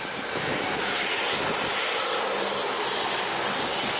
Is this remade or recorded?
recorded